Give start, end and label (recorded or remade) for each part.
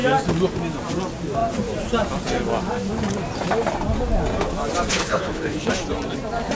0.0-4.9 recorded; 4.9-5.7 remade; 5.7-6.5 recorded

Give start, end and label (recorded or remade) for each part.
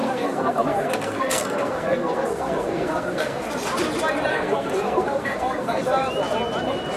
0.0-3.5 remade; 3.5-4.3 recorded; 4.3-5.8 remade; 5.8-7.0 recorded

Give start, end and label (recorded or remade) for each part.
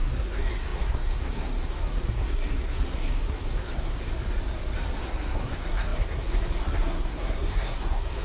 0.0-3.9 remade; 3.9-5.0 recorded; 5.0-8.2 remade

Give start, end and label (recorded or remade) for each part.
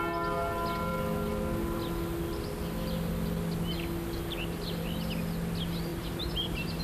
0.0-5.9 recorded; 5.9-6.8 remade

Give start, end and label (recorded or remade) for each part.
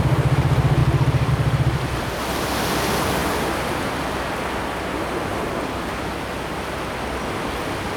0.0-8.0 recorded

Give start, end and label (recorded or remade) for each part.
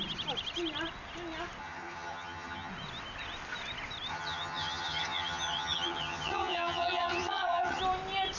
0.0-1.6 recorded; 1.6-2.7 remade; 2.7-4.1 recorded; 4.1-7.8 remade; 7.8-8.4 recorded